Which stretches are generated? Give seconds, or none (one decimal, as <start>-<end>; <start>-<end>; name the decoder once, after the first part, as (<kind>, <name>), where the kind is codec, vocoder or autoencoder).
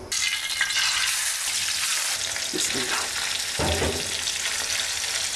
none